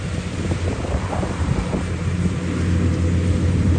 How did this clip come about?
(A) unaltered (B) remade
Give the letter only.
A